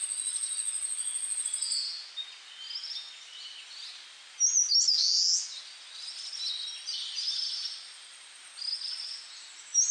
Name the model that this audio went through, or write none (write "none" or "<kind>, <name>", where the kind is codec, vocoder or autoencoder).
none